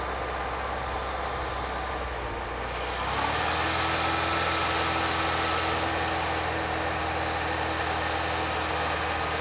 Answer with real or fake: real